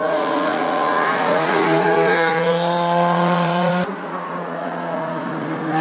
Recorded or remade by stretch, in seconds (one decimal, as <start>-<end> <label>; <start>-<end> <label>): 0.0-5.8 remade